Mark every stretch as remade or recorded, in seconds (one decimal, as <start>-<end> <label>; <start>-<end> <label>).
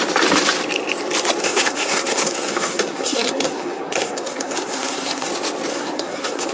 0.0-1.4 recorded; 1.4-5.3 remade; 5.3-5.7 recorded; 5.7-6.5 remade